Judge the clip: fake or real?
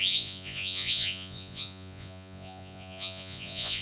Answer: fake